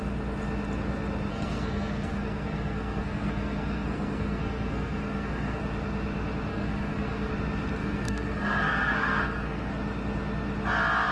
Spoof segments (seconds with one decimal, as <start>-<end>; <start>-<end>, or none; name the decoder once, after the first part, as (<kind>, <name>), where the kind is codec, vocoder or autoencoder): 1.3-5.6 (codec, SNAC); 6.5-7.3; 7.8-9.7